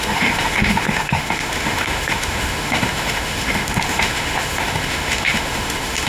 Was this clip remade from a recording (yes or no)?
yes